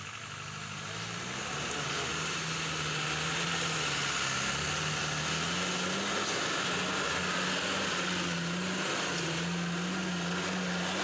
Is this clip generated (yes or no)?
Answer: no